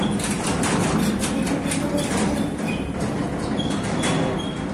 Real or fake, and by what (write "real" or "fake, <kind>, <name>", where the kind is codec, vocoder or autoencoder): real